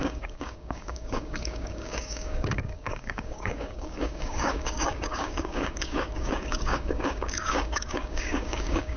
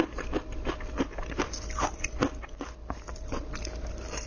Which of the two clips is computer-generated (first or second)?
first